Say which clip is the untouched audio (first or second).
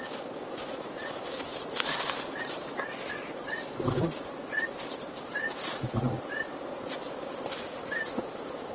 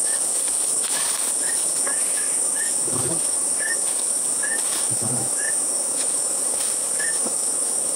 first